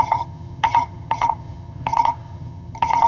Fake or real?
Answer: fake